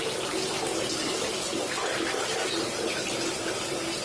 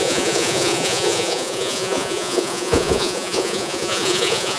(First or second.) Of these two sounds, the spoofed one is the second